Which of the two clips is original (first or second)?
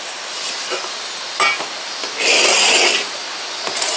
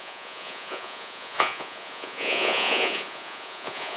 first